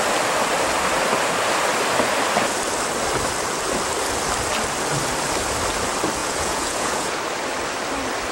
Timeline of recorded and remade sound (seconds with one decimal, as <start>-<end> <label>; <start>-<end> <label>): 0.0-6.2 recorded; 6.2-7.2 remade; 7.2-8.3 recorded